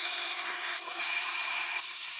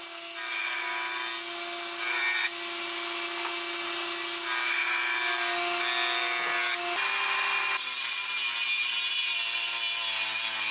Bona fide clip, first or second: second